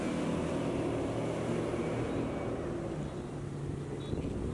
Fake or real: real